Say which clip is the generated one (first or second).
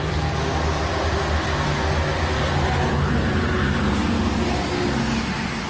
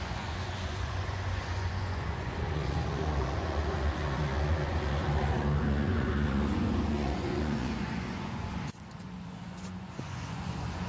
second